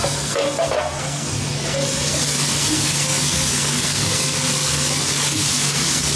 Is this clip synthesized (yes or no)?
yes